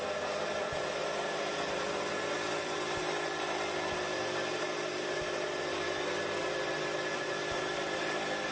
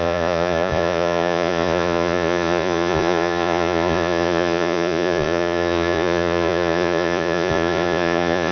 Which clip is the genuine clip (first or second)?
first